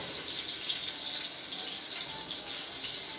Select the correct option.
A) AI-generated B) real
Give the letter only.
B